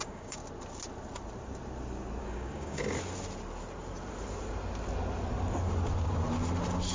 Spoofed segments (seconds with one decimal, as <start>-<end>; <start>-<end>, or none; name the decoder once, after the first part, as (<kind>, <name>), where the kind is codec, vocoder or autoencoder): 0.0-0.4 (codec, DAC); 2.2-2.8